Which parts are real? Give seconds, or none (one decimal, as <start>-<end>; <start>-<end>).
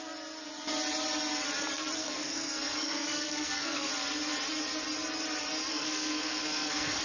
0.0-2.0; 3.9-5.7